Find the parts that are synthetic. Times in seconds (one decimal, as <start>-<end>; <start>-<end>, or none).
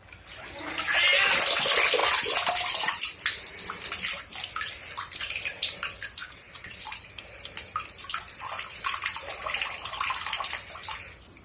6.2-6.8